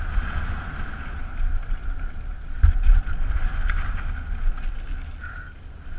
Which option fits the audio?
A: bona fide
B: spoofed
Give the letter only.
A